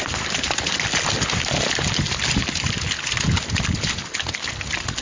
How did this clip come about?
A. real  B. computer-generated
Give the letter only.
A